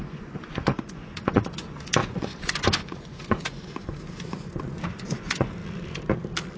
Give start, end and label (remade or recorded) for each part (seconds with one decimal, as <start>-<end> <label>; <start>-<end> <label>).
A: 0.0-5.6 remade; 5.6-6.6 recorded